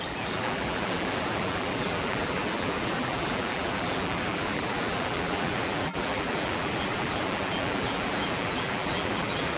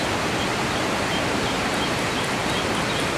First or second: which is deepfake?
first